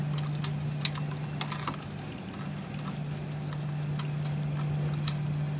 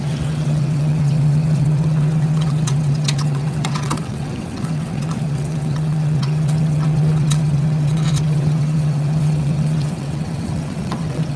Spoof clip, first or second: second